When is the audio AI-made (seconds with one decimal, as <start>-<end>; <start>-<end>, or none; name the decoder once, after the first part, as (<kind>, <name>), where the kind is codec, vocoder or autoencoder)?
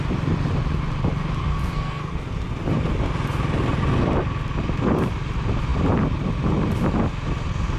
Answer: 1.5-2.2 (codec, SNAC)